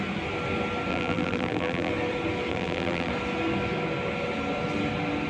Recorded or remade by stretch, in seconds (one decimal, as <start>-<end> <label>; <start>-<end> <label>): 0.0-0.9 recorded; 0.9-1.9 remade; 1.9-2.5 recorded; 2.5-3.1 remade; 3.1-5.3 recorded